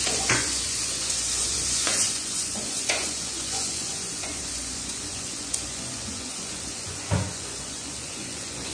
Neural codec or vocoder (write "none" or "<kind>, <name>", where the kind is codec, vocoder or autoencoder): vocoder, Vocos